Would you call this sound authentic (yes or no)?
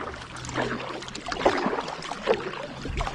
yes